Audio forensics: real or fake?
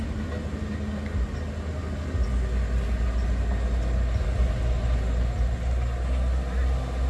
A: real